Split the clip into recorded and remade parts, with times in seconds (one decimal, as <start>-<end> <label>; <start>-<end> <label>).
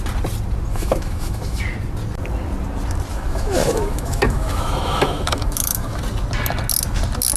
0.0-0.7 recorded; 0.7-1.6 remade; 1.6-3.1 recorded; 3.1-6.0 remade; 6.0-7.4 recorded